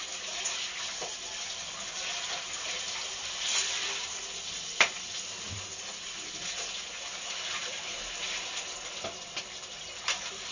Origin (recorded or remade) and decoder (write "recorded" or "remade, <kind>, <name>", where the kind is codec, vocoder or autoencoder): recorded